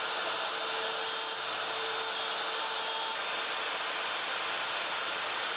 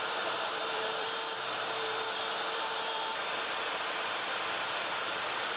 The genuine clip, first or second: first